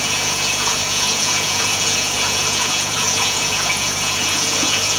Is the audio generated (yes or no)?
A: yes